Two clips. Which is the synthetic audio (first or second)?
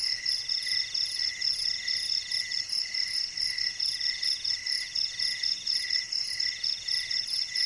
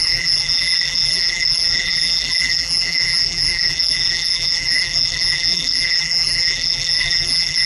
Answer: second